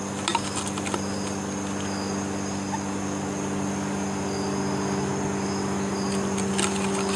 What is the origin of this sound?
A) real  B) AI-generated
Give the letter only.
A